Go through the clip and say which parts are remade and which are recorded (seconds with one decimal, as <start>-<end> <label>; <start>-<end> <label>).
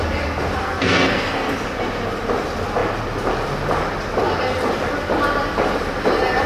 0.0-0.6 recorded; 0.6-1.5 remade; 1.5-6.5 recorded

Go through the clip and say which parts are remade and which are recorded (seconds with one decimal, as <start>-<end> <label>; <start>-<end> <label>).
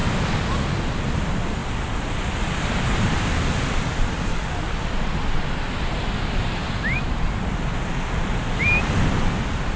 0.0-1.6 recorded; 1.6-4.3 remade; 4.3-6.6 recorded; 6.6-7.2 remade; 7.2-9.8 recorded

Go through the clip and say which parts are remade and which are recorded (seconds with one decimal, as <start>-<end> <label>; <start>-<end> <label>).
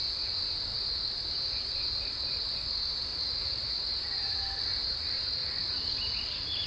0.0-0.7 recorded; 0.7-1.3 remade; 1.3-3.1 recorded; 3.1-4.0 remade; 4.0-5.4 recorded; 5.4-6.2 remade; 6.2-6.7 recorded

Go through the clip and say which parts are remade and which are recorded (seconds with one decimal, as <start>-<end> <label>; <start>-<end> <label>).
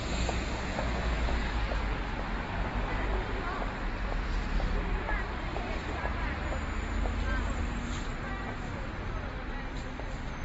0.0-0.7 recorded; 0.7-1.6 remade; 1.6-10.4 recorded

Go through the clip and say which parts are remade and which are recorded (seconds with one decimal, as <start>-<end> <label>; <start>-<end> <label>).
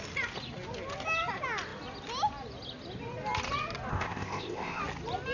0.0-3.9 recorded; 3.9-4.8 remade; 4.8-5.3 recorded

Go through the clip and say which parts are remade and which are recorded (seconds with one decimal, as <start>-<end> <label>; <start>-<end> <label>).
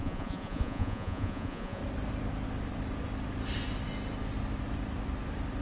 0.0-1.8 remade; 1.8-5.6 recorded